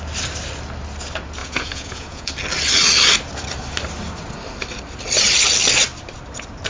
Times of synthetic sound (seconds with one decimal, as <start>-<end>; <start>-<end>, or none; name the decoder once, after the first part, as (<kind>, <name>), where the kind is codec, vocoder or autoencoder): 1.4-2.3 (vocoder, Vocos)